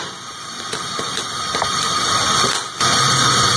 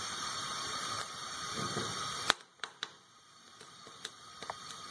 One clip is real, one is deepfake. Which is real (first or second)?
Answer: first